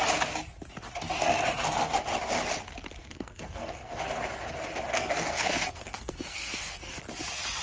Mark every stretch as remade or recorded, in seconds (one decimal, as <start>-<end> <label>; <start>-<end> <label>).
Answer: 0.0-3.0 recorded; 3.0-4.0 remade; 4.0-4.9 recorded; 4.9-7.0 remade; 7.0-7.6 recorded